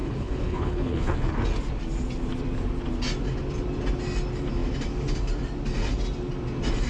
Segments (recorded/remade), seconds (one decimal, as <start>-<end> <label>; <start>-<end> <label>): 0.0-1.3 remade; 1.3-6.9 recorded